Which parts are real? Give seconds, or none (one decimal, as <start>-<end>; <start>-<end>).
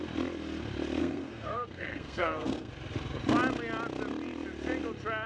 0.0-1.0; 2.7-5.3